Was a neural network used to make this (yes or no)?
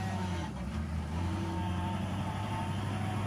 yes